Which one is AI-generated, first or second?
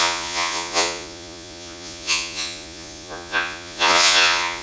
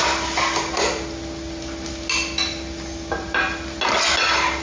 first